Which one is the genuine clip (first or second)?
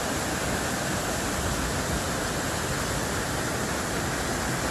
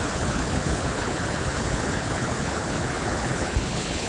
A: first